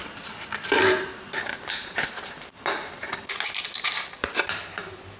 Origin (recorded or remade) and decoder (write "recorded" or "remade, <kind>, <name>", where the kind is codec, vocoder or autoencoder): recorded